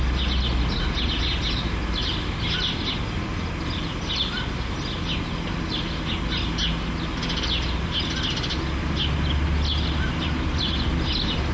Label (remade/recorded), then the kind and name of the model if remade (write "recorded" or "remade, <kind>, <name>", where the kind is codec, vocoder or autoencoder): recorded